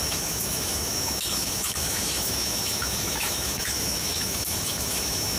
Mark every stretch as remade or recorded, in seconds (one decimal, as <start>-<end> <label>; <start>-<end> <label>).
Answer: 0.0-5.4 remade